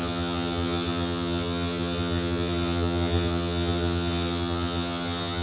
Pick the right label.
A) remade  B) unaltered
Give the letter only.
A